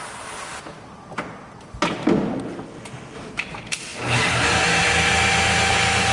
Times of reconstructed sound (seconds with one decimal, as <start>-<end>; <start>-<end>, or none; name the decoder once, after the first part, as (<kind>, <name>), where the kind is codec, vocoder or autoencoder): none